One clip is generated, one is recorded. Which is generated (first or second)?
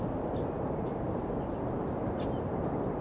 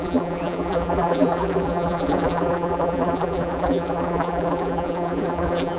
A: second